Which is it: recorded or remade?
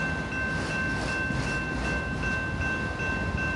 recorded